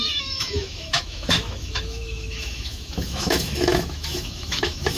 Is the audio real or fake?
fake